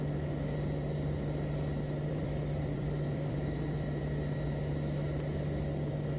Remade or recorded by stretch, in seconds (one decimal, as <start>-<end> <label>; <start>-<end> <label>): 0.0-2.1 recorded; 2.1-4.2 remade; 4.2-6.2 recorded

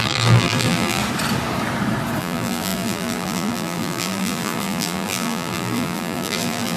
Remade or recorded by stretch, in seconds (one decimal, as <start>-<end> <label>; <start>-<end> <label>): 0.0-1.0 remade; 1.0-2.2 recorded; 2.2-6.8 remade

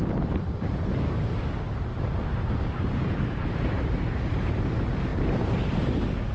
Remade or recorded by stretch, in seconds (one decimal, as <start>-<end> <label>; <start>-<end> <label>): 0.0-1.9 recorded; 1.9-4.6 remade; 4.6-5.1 recorded; 5.1-5.6 remade; 5.6-6.3 recorded

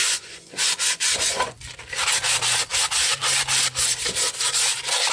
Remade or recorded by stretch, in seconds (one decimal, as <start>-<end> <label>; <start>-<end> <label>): 0.0-1.6 remade; 1.6-5.1 recorded

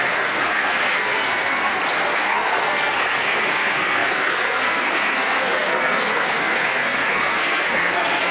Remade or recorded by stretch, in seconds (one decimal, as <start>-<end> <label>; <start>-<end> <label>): 0.0-1.7 remade; 1.7-2.2 recorded; 2.2-8.3 remade

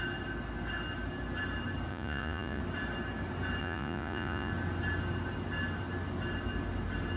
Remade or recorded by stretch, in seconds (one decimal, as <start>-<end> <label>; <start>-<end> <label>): 0.0-1.9 recorded; 1.9-2.6 remade; 2.6-3.6 recorded; 3.6-4.5 remade; 4.5-7.2 recorded

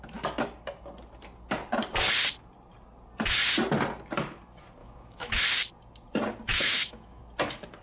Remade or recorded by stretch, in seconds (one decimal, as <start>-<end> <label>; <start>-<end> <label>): 0.0-4.8 recorded; 4.8-5.4 remade; 5.4-6.5 recorded; 6.5-7.2 remade; 7.2-7.8 recorded